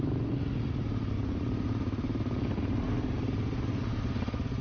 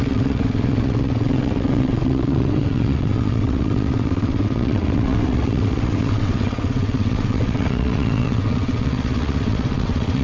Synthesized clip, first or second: second